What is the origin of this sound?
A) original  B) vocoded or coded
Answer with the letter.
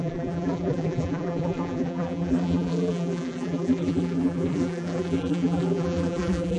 B